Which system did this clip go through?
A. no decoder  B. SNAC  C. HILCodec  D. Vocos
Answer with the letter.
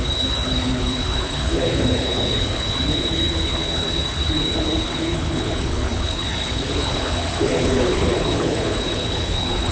C